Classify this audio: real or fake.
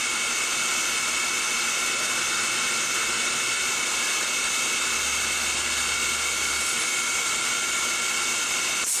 real